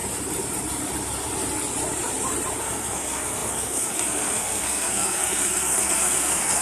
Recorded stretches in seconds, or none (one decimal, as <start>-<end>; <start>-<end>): 0.0-2.6